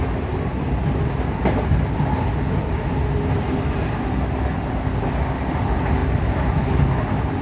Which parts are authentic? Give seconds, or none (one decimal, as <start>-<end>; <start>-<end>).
0.0-7.4